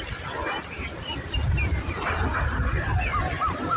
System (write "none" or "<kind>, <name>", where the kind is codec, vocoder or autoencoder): none